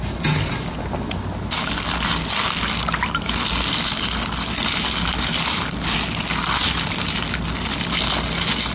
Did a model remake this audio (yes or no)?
no